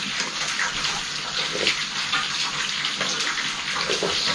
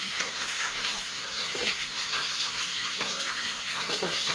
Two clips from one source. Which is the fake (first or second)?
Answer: second